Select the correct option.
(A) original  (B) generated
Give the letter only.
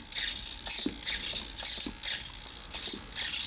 A